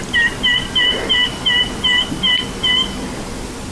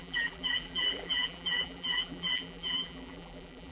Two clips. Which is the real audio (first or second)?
first